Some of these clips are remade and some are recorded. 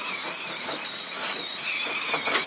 remade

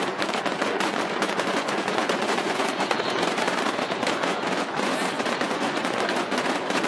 remade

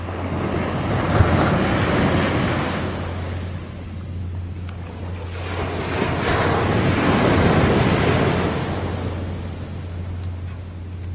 recorded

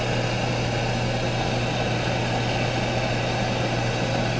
recorded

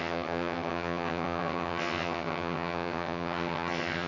remade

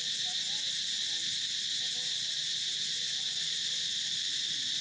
remade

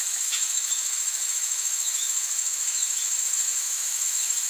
remade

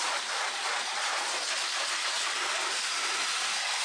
recorded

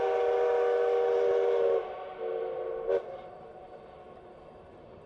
recorded